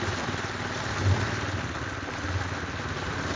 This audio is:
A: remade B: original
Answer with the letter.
B